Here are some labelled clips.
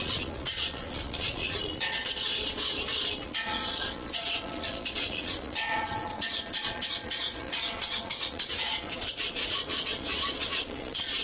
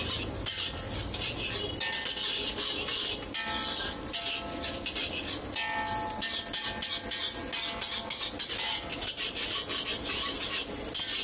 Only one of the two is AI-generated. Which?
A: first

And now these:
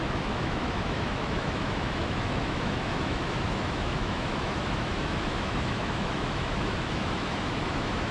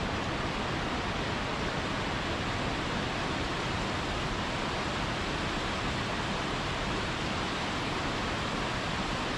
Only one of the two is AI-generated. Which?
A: first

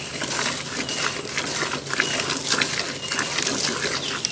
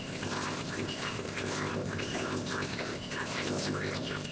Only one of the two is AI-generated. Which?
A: second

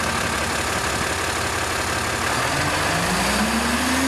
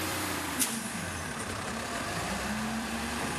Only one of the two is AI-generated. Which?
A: second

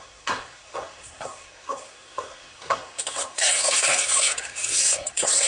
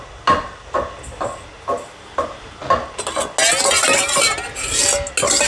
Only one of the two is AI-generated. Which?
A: first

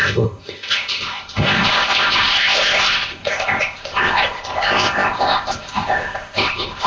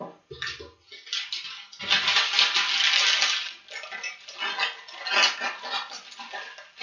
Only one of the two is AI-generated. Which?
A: first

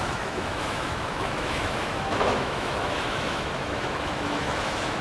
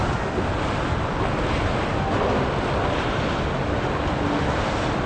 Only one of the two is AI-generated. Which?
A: first